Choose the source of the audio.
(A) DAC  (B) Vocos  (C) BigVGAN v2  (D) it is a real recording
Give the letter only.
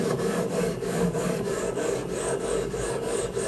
A